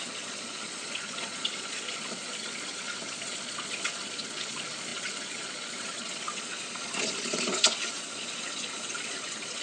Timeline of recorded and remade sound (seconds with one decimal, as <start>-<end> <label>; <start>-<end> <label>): 0.0-9.6 remade